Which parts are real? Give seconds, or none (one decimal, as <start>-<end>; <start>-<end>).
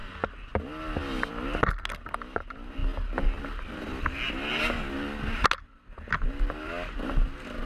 0.0-7.7